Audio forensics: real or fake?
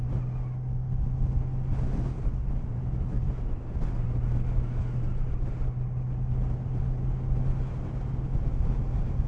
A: real